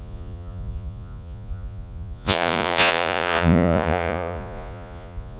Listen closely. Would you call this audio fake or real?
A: fake